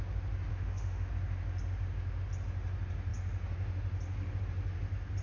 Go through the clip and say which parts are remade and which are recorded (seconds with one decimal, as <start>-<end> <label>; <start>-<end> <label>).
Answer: 0.0-0.5 recorded; 0.5-1.1 remade; 1.1-5.2 recorded